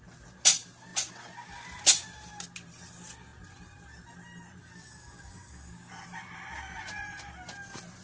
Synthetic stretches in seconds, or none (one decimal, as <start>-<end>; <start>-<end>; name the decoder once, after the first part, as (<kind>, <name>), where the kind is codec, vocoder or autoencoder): 4.6-5.9 (codec, DAC)